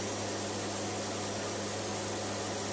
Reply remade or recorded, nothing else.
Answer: recorded